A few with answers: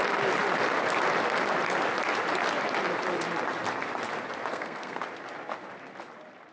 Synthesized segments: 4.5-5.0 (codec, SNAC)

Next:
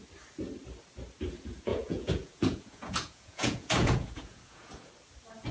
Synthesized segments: 1.7-4.9 (vocoder, Vocos)

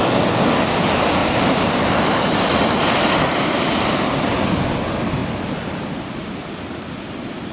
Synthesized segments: 1.2-2.4 (vocoder, BigVGAN v2)